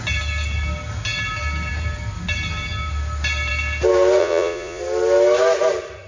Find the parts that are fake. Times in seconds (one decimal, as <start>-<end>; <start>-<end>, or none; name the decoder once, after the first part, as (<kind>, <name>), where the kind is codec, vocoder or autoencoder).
4.2-4.8 (vocoder, Vocos)